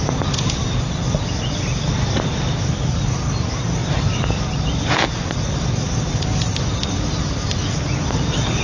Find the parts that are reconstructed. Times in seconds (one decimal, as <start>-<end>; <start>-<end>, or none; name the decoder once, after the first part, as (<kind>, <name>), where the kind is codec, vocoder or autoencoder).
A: none